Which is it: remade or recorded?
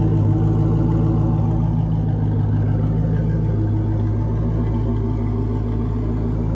recorded